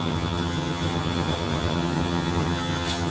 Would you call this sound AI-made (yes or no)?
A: yes